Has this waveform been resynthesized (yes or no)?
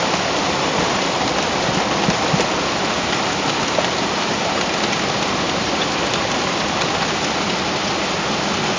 no